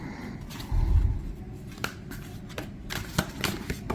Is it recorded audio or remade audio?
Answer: recorded